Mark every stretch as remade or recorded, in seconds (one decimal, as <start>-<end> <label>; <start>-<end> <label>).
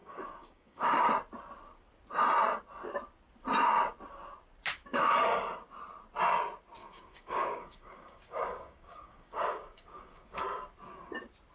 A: 0.0-1.1 remade; 1.1-4.8 recorded; 4.8-5.4 remade; 5.4-6.8 recorded; 6.8-10.4 remade; 10.4-11.5 recorded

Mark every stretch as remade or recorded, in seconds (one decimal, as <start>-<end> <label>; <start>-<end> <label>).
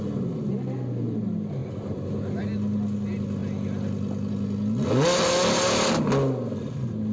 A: 0.0-7.1 recorded